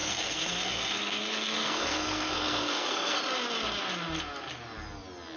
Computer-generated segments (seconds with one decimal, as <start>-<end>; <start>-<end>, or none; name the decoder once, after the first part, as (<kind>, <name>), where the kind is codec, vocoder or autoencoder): 0.0-3.2 (codec, SNAC)